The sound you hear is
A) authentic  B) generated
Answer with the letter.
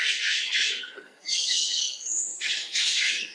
B